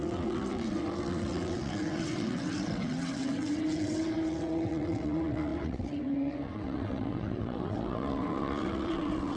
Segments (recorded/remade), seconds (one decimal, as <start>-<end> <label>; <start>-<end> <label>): 0.0-9.4 remade